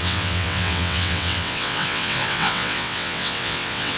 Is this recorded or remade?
remade